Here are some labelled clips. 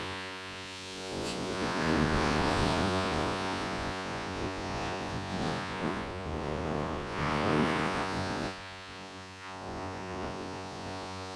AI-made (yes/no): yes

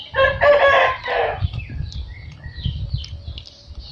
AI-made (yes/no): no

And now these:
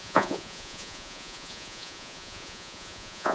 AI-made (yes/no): yes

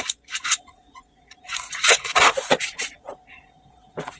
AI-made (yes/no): yes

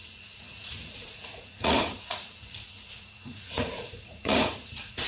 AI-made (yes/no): yes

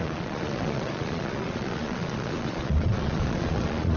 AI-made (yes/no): yes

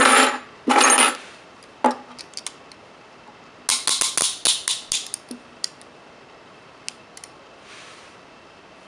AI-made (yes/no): no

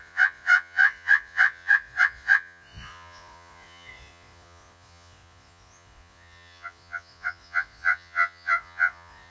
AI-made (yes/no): yes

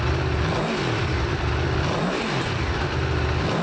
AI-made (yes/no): no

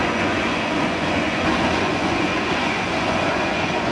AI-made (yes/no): yes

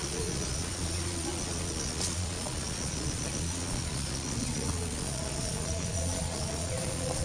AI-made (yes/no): yes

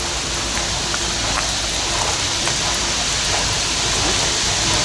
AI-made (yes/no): no